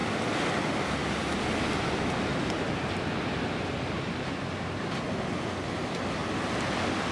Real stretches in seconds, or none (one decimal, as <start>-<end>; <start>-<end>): 0.0-7.1